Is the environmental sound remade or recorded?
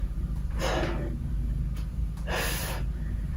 recorded